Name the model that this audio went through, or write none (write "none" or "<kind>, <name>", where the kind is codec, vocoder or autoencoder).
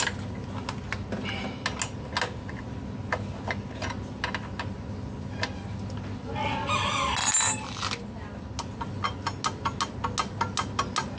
none